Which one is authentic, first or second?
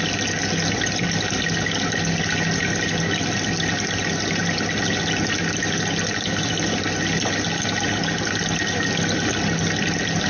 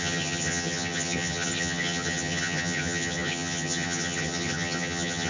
first